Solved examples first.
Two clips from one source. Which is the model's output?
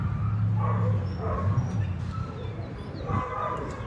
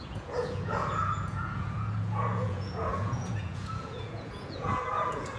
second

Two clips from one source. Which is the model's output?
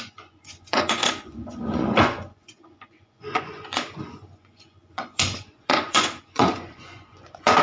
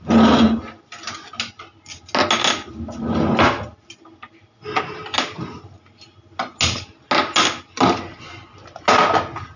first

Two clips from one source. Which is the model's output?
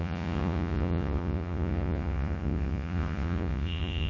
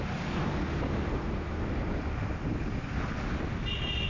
first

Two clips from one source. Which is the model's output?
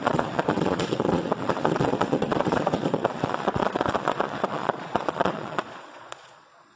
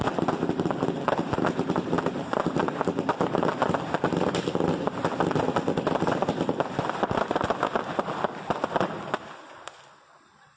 first